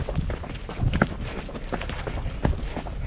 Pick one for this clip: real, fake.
real